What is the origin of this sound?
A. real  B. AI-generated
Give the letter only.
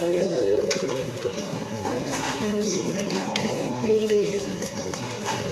B